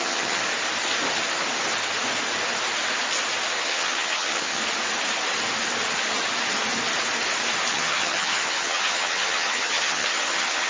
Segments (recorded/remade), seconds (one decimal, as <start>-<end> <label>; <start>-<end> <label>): 0.0-0.4 remade; 0.4-3.6 recorded; 3.6-4.6 remade; 4.6-7.7 recorded; 7.7-10.7 remade